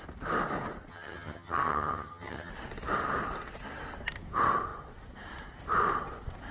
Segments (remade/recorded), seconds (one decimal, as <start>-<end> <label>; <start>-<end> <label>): 0.0-0.9 recorded; 0.9-2.5 remade; 2.5-6.5 recorded